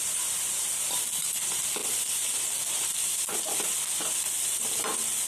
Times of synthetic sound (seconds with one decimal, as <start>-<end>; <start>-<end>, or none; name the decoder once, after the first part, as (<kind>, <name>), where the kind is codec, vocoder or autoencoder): none